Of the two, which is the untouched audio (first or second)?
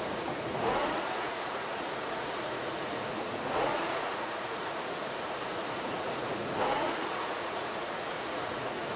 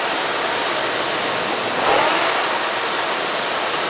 second